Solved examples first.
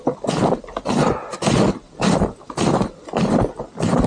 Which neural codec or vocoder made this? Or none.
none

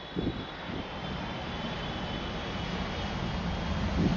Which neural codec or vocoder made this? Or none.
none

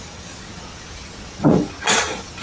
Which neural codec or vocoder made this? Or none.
vocoder, Vocos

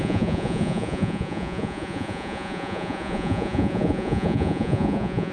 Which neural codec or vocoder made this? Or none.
vocoder, Vocos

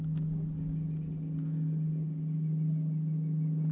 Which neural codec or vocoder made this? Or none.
none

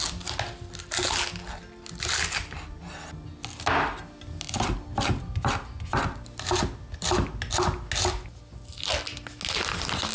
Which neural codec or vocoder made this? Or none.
none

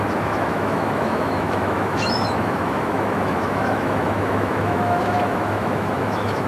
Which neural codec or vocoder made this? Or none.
autoencoder, DAC-VAE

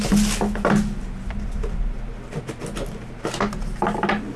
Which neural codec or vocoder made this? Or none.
none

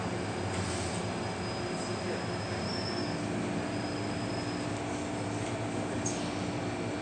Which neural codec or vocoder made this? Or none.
none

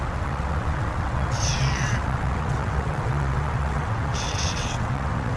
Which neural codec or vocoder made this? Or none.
vocoder, WaveNeXt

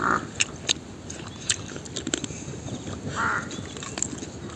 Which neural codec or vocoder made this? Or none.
none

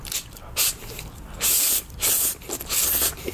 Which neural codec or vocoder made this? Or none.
vocoder, BigVGAN v2